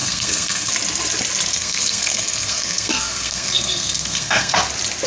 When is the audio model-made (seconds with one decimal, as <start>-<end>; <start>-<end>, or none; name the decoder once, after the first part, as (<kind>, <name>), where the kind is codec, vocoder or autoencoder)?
0.0-0.7 (codec, SNAC); 1.5-4.6